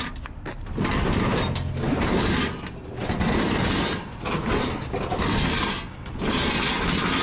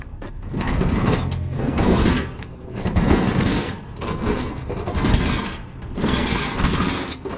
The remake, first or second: second